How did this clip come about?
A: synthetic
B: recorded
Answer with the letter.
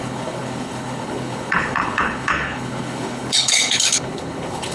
A